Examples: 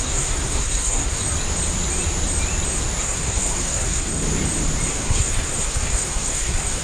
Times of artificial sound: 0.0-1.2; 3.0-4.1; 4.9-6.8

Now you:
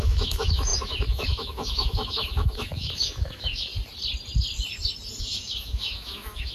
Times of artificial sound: 0.0-3.7; 5.2-6.5

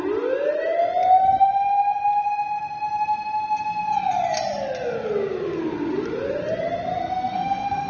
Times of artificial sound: 7.0-7.9

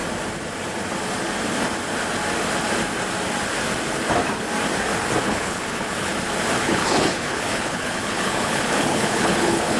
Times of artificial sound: 5.2-6.1; 6.6-9.8

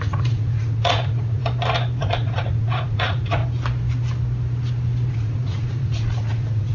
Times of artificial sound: 0.0-1.4; 2.0-3.4; 5.1-6.7

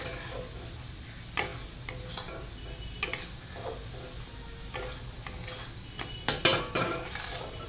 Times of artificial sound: none

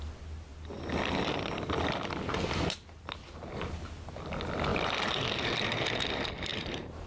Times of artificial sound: 6.5-7.1